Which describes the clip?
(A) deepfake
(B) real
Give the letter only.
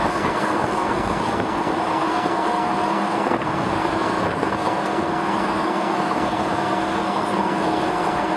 A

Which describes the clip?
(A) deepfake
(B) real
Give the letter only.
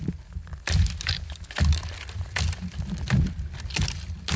B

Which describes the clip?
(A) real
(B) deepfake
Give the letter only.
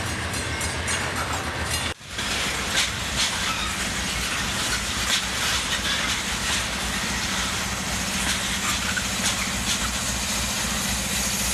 A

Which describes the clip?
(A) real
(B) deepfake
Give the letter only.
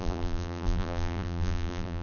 B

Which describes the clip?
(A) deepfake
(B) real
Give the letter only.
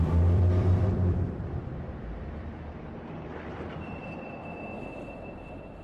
A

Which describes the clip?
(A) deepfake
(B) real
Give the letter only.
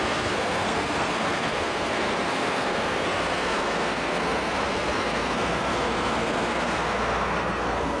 A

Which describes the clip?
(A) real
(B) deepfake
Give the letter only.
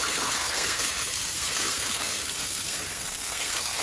B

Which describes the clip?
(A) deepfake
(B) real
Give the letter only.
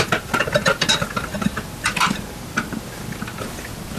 B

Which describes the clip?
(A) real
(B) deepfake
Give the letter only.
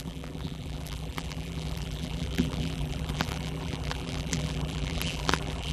B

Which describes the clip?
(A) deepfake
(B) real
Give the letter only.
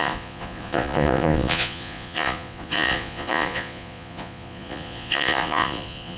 A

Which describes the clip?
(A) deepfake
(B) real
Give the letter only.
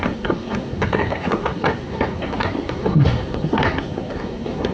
A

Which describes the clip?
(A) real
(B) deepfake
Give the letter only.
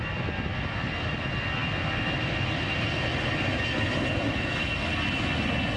A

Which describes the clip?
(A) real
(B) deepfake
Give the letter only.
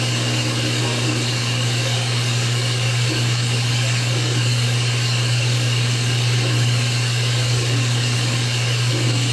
B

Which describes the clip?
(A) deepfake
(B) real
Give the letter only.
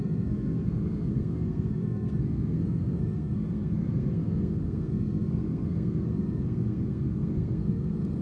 A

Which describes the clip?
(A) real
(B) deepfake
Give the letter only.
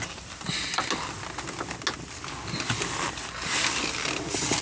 A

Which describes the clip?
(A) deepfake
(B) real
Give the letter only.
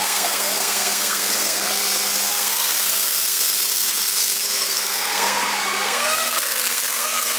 A